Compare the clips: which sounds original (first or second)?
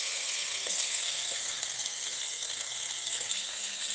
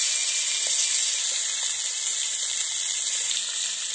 second